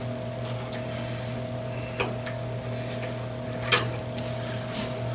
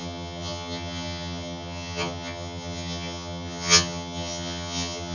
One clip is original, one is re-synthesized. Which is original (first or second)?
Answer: first